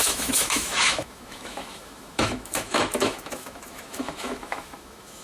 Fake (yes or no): yes